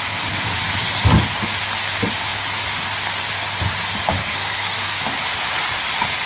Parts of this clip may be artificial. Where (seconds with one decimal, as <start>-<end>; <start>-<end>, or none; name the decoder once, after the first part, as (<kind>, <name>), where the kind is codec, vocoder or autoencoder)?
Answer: 4.2-5.0 (codec, SNAC)